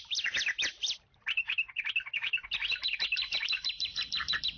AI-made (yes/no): yes